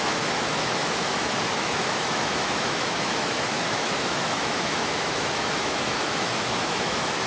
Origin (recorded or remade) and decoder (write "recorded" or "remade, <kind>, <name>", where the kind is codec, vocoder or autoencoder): remade, autoencoder, DAC-VAE